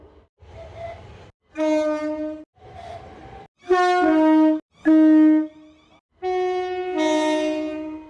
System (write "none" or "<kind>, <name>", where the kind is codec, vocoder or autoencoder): none